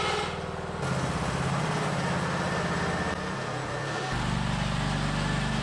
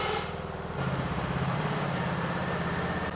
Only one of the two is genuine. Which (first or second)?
first